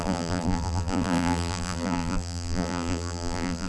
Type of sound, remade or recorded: remade